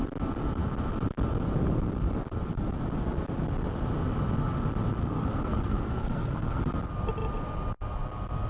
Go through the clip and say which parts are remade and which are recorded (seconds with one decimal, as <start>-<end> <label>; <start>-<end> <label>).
0.0-5.0 recorded; 5.0-6.6 remade; 6.6-8.5 recorded